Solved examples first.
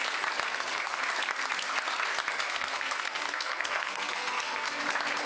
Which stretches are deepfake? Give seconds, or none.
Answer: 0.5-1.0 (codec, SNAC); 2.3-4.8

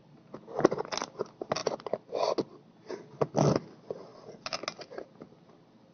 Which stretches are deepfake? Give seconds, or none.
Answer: none

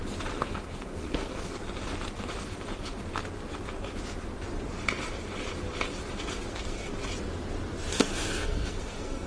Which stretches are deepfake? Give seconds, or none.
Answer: 0.5-1.6 (codec, SNAC); 6.5-6.9; 7.9-9.3

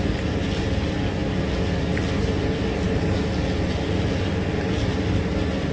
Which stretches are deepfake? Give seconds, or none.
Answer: none

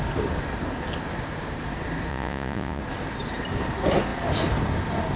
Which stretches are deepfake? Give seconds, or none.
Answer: 2.1-2.8 (vocoder, Vocos)